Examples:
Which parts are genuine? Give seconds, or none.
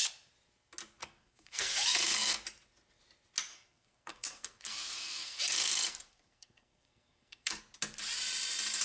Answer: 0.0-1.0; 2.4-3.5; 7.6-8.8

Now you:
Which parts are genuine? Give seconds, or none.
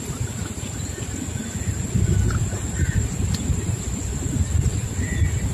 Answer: 0.0-5.5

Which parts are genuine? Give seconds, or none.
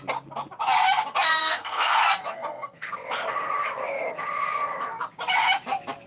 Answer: 0.0-1.4; 2.9-6.1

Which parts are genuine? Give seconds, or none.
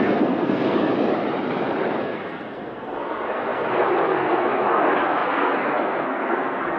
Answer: 0.9-2.0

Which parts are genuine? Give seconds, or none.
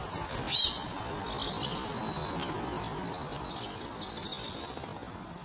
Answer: 0.0-5.4